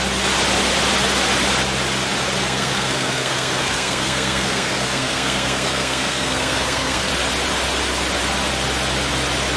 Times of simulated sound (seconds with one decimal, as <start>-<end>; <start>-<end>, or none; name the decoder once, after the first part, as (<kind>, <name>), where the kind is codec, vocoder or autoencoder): 2.4-7.1 (codec, SNAC)